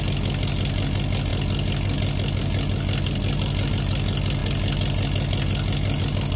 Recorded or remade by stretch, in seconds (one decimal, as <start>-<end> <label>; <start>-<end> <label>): 0.0-6.4 recorded